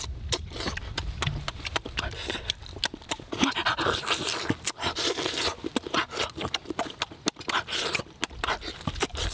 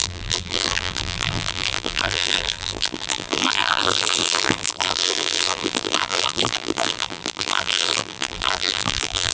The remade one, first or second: second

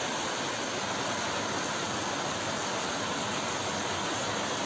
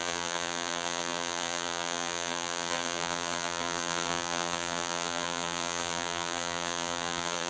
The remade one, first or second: second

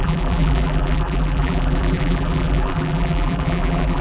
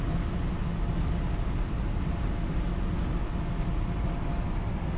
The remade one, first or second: first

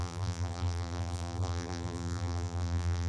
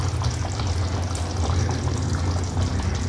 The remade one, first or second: first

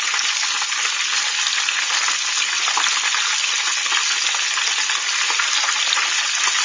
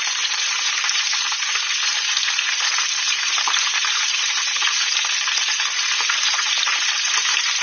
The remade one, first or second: second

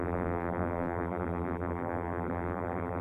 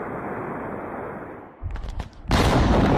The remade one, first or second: first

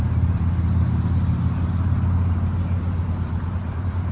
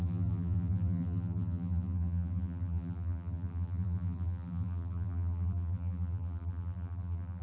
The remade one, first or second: second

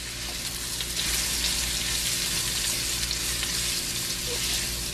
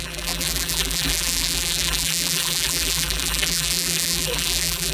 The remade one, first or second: second